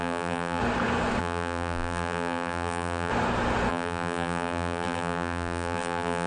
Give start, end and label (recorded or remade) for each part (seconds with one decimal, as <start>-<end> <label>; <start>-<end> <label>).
0.0-0.6 remade; 0.6-1.2 recorded; 1.2-3.1 remade; 3.1-3.7 recorded; 3.7-6.3 remade